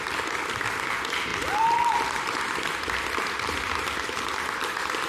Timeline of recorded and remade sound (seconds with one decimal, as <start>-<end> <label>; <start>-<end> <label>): 0.0-1.3 recorded; 1.3-4.4 remade; 4.4-5.1 recorded